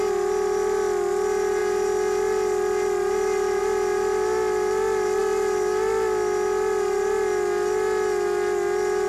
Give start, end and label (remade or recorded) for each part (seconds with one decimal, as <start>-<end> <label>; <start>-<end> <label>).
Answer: 0.0-9.1 recorded

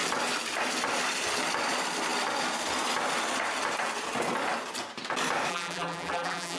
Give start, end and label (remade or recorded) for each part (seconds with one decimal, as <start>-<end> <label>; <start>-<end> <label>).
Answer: 0.0-5.5 recorded; 5.5-6.6 remade

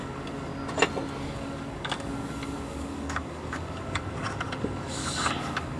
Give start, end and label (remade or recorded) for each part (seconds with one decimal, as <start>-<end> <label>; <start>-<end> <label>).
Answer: 0.0-0.5 remade; 0.5-1.2 recorded; 1.2-5.8 remade

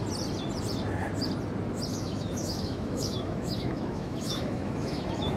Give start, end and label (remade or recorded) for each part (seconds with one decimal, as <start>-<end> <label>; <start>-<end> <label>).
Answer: 0.0-1.9 recorded; 1.9-5.4 remade

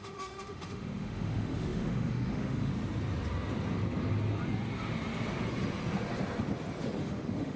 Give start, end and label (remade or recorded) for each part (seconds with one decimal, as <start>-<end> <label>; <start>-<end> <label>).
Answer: 0.0-2.7 remade; 2.7-7.0 recorded; 7.0-7.6 remade

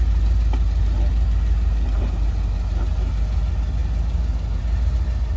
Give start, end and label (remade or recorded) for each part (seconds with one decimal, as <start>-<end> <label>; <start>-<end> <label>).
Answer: 0.0-5.4 recorded